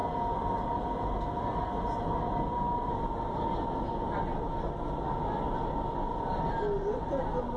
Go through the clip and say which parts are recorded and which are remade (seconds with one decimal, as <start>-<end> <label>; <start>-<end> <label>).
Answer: 0.0-7.6 recorded